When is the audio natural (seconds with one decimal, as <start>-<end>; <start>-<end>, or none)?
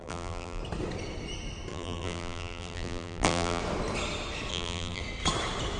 0.6-1.7; 3.6-4.5; 5.0-5.8